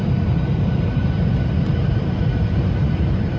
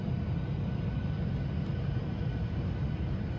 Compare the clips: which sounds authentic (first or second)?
second